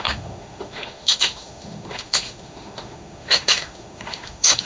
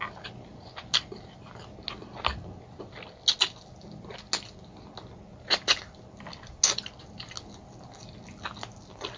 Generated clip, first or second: first